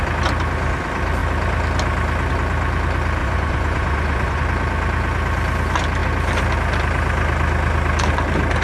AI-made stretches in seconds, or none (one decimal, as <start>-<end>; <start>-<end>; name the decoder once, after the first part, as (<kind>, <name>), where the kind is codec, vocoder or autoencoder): 3.2-4.4 (vocoder, Vocos)